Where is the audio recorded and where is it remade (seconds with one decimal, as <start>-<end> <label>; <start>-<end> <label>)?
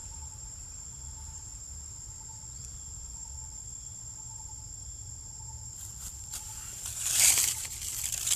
0.0-8.4 remade